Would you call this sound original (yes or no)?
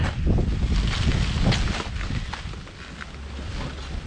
yes